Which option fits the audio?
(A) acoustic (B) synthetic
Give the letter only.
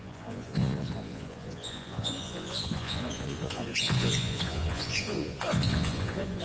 B